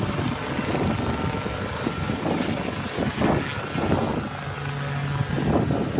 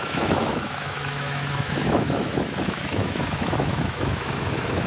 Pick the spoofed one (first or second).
second